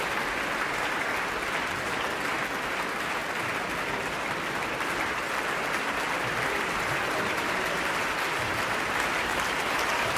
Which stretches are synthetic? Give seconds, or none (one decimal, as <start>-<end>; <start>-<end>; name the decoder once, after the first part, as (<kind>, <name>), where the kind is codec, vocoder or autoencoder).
0.0-3.2 (vocoder, BigVGAN v2); 4.4-10.2